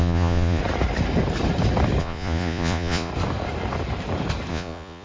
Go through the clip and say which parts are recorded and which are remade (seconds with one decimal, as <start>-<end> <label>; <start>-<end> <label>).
0.0-0.6 remade; 0.6-2.0 recorded; 2.0-3.1 remade; 3.1-4.5 recorded; 4.5-5.0 remade